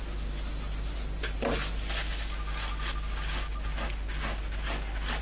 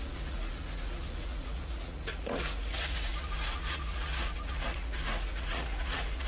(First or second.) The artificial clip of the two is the second